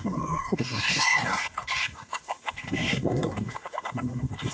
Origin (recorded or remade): remade